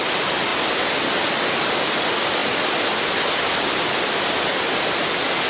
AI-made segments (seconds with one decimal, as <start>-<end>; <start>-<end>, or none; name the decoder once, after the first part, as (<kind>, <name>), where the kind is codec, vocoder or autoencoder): none

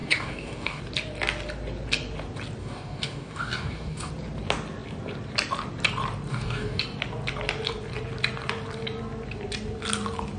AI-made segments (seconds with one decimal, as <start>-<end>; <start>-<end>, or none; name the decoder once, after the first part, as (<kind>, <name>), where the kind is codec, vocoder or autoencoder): 0.0-0.8 (codec, DAC); 2.6-4.1; 6.3-6.8

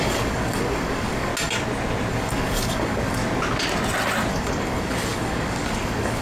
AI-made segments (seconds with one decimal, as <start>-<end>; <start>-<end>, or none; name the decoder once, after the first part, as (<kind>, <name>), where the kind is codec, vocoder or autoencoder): 0.0-1.3 (codec, DAC); 2.1-3.2; 4.3-6.2